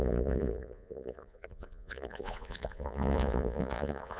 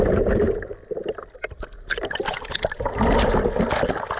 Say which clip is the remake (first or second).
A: first